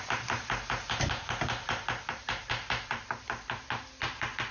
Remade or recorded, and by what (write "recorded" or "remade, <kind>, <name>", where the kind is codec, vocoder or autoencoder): recorded